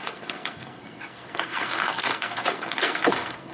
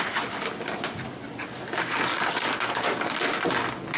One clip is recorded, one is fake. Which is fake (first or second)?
first